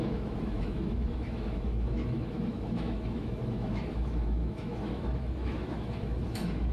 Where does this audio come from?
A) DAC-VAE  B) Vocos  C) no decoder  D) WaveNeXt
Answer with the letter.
A